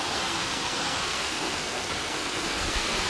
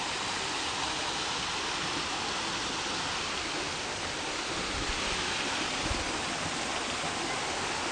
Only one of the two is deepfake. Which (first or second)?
first